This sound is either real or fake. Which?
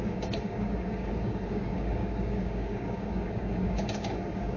fake